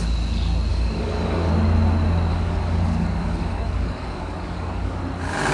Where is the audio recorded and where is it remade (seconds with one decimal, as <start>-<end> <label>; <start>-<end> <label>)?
0.0-0.7 recorded; 0.7-1.5 remade; 1.5-2.3 recorded; 2.3-5.0 remade; 5.0-5.5 recorded